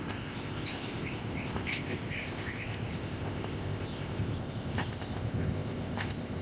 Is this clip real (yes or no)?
no